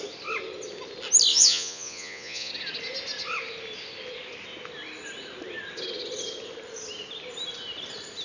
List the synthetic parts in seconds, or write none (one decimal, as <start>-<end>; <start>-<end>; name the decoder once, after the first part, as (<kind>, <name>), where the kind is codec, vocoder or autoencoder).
1.3-2.5 (vocoder, Vocos)